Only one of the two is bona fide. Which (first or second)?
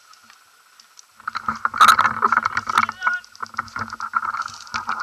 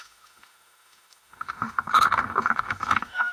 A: first